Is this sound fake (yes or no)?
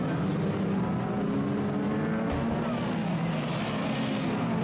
no